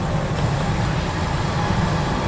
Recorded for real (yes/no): yes